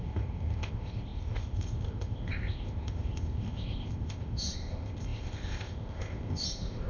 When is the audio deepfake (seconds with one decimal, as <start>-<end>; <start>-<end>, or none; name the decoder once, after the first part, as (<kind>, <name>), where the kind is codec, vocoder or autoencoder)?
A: 0.0-6.9 (codec, ZipCodec)